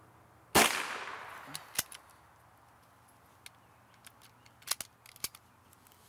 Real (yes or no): yes